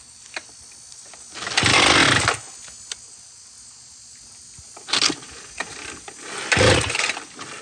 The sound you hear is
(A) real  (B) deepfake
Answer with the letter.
A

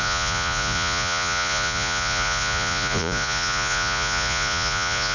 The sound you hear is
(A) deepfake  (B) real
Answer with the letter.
A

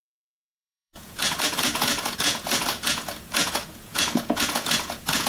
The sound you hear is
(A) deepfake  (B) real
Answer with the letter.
A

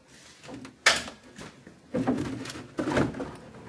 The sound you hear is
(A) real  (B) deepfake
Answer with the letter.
A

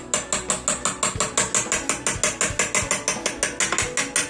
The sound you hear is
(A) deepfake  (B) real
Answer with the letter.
B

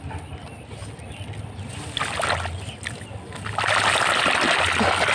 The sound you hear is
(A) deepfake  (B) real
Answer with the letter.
B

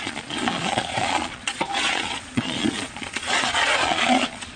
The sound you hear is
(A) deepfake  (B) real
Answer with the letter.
A